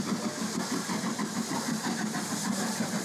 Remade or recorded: recorded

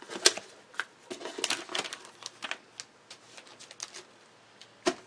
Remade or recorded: recorded